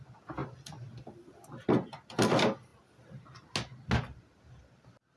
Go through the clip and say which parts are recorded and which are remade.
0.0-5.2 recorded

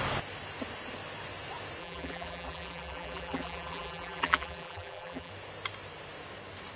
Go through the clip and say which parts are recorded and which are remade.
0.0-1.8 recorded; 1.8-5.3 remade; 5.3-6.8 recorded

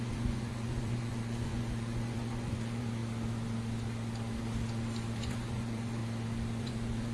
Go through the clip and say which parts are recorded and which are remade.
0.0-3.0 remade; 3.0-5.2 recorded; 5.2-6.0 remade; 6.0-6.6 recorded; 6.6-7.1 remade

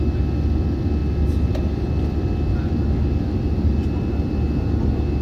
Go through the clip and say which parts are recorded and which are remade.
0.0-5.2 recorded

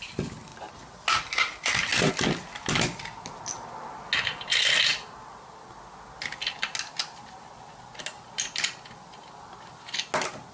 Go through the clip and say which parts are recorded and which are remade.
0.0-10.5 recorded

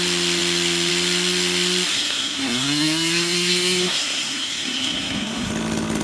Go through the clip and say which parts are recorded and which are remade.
0.0-1.9 recorded; 1.9-5.5 remade; 5.5-6.0 recorded